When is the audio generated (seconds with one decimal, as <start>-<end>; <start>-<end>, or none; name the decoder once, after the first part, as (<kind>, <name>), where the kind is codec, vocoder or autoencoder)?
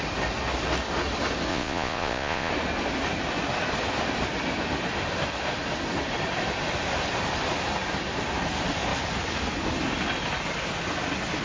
1.5-2.5 (vocoder, Vocos)